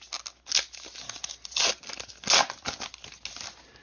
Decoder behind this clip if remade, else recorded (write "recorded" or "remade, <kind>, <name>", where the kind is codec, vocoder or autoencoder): recorded